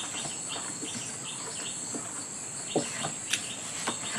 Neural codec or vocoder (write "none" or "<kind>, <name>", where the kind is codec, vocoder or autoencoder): none